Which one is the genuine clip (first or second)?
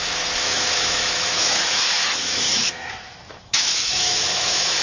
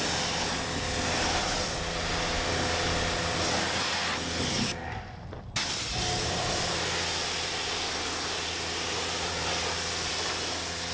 second